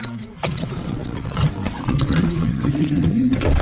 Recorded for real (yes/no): no